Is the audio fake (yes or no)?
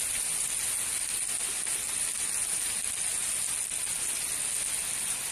no